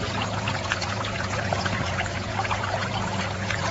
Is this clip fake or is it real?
fake